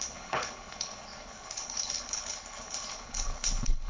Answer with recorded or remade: remade